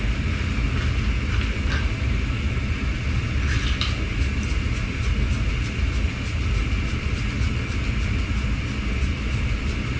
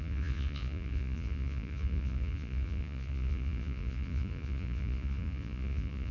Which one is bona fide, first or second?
first